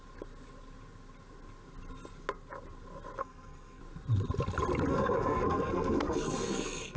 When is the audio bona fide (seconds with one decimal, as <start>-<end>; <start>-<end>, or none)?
0.0-3.2; 3.8-4.9